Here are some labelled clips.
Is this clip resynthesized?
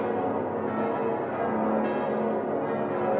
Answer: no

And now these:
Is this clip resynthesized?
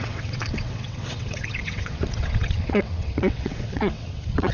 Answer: yes